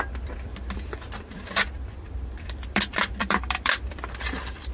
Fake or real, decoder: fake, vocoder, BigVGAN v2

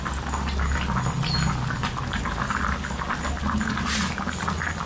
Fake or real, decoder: real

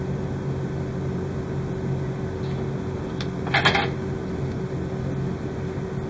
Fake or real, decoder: real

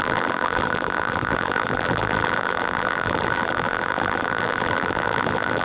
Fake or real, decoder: fake, vocoder, BigVGAN v2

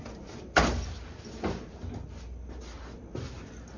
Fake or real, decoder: real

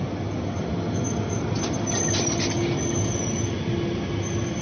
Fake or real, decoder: real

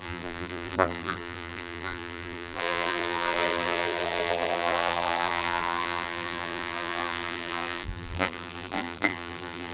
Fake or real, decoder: fake, vocoder, BigVGAN v2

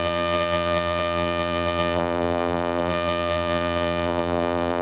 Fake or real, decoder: fake, vocoder, BigVGAN v2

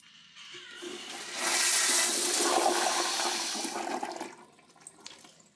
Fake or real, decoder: real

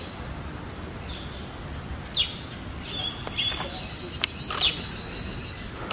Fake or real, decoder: real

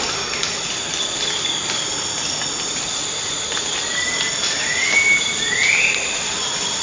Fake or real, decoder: real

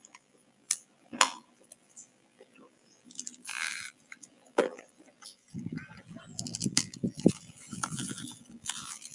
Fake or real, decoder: fake, vocoder, BigVGAN v2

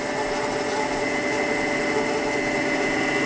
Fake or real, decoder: real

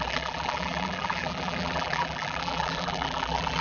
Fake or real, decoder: fake, vocoder, BigVGAN v2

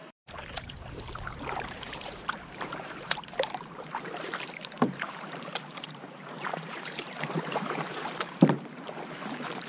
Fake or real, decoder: fake, vocoder, BigVGAN v2